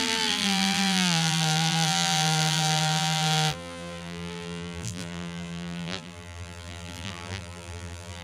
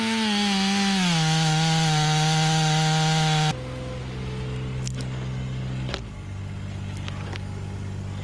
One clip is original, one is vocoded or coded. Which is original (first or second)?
second